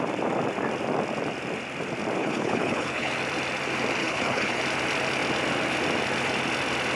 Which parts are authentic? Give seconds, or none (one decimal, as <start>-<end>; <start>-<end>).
0.0-2.2; 3.1-4.0; 4.6-7.0